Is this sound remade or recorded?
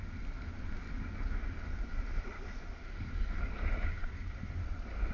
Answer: recorded